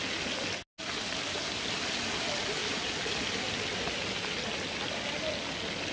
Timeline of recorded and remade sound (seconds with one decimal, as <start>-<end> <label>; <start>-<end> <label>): 0.0-5.9 recorded